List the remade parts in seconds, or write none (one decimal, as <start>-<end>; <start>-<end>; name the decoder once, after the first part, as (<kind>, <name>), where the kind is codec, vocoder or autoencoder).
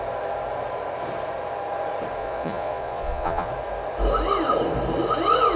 2.2-3.5 (vocoder, Vocos)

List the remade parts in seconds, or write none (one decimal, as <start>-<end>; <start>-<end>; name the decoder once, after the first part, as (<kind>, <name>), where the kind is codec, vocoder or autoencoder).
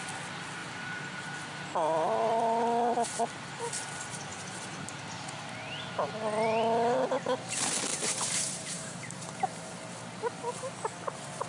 0.6-1.2 (vocoder, BigVGAN v2); 7.9-9.7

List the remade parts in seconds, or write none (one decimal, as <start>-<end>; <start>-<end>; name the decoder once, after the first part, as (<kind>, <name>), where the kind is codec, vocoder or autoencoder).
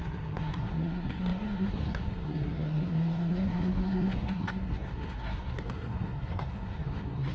0.0-7.3 (codec, SNAC)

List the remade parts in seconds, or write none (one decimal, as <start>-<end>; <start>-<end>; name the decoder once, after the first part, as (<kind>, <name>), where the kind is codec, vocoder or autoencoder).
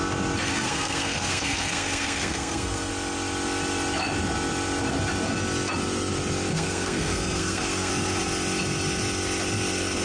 0.5-2.9 (codec, SNAC); 6.5-7.9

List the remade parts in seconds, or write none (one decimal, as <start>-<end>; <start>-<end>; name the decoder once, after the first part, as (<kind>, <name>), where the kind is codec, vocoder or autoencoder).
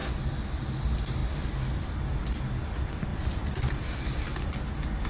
none